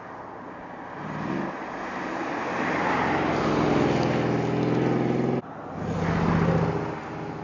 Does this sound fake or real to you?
real